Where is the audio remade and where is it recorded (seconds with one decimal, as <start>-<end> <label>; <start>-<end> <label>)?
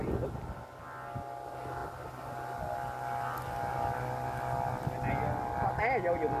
0.0-6.4 recorded